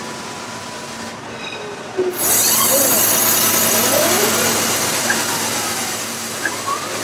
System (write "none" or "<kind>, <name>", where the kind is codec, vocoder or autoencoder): none